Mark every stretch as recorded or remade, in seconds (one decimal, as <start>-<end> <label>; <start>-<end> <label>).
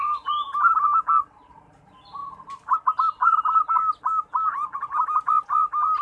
0.0-6.0 recorded